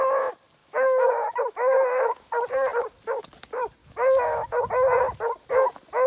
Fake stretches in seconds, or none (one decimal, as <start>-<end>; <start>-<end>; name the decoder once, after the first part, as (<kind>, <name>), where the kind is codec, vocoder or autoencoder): 0.6-2.3 (autoencoder, DAC-VAE); 3.8-4.5